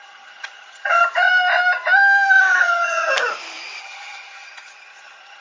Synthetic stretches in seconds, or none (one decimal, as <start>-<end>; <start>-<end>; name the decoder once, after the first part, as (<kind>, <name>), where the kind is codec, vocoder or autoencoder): 0.0-1.0 (vocoder, HiFi-GAN); 2.6-3.1; 3.8-5.4